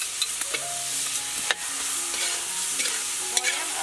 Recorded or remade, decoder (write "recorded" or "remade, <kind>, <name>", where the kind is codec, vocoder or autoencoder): recorded